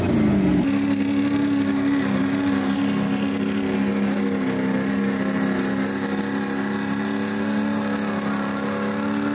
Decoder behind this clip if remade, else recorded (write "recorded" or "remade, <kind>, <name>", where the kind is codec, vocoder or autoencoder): recorded